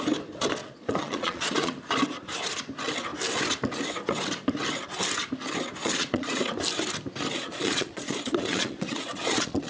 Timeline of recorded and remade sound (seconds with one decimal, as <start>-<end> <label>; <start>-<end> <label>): 0.0-0.6 recorded; 0.6-1.7 remade; 1.7-5.8 recorded; 5.8-6.4 remade; 6.4-7.3 recorded; 7.3-9.7 remade